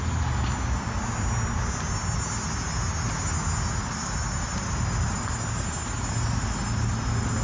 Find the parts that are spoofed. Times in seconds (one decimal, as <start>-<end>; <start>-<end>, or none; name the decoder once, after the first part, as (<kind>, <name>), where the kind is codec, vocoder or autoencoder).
none